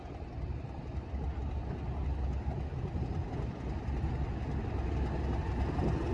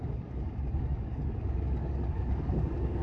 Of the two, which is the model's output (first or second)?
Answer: second